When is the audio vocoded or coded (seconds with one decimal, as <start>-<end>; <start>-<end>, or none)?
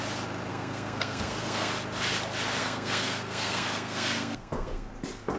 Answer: 0.5-1.7; 2.6-4.9